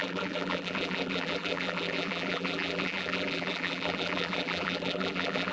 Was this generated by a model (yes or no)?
yes